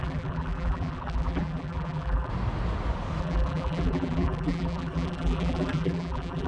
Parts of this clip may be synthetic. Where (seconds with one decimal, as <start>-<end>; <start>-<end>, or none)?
0.0-2.3; 3.2-6.5